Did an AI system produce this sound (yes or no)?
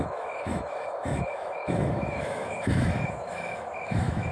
yes